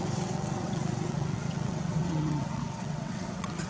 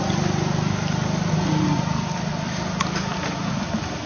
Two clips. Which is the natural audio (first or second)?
second